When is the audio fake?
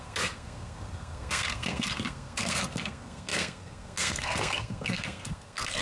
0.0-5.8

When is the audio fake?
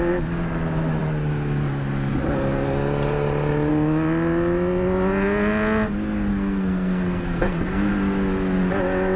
6.3-7.9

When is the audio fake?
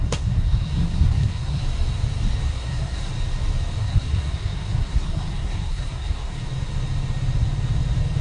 0.0-1.6; 2.5-3.1; 3.8-6.5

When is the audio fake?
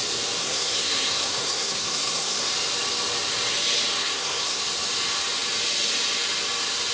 0.4-2.5; 4.0-4.6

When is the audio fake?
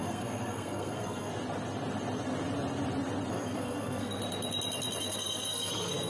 0.0-1.3; 3.3-4.2; 5.0-6.1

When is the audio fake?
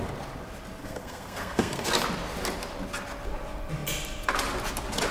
0.8-1.9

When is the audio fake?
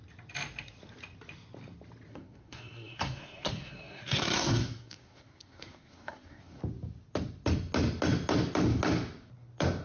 2.1-6.6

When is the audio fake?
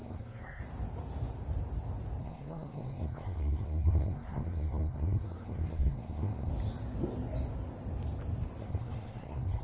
0.0-0.6; 2.2-6.5; 8.6-9.6